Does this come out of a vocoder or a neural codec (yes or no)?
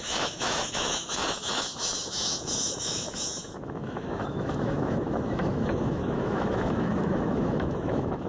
yes